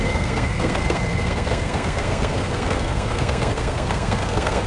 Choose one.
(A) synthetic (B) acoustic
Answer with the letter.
A